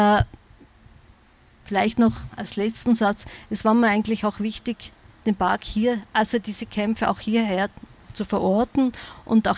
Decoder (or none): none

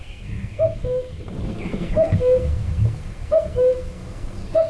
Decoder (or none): codec, SNAC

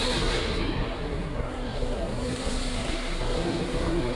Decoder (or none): codec, SNAC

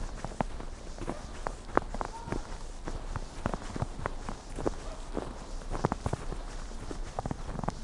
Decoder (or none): none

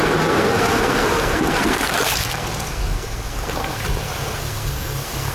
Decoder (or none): codec, SNAC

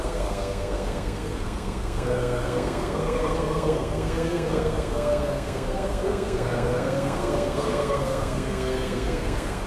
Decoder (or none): codec, SNAC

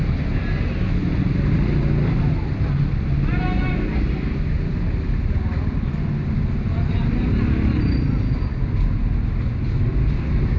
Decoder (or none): none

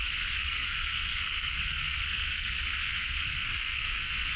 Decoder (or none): codec, SNAC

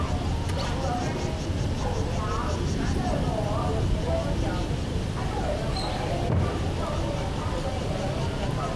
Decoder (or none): none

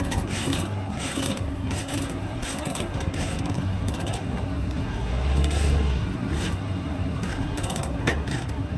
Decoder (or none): codec, SNAC